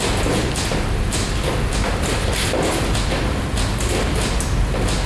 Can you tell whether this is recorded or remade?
recorded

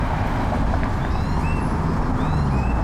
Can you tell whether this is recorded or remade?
recorded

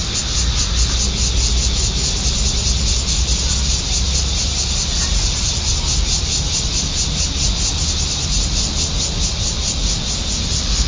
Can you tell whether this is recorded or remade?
recorded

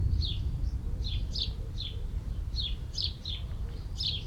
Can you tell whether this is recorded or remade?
remade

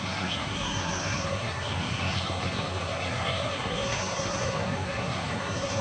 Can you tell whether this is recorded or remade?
remade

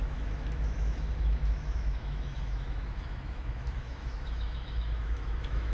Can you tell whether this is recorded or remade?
remade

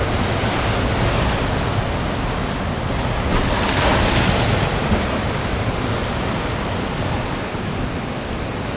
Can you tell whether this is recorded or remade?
recorded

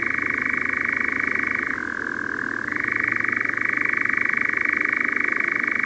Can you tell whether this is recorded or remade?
recorded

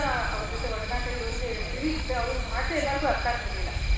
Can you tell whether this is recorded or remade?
recorded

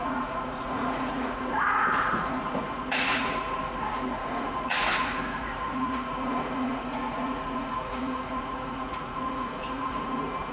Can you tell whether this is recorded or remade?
remade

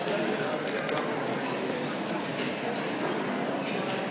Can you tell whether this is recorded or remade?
recorded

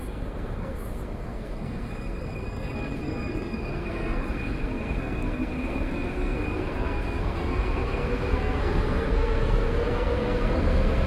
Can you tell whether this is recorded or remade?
remade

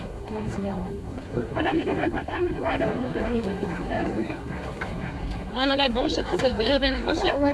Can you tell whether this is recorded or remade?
remade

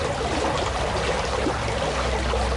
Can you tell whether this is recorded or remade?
recorded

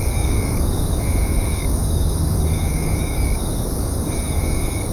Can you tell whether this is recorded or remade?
remade